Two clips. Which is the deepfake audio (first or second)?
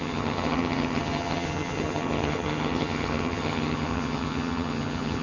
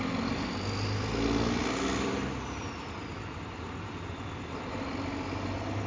first